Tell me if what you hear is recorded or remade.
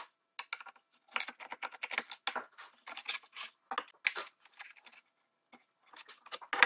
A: recorded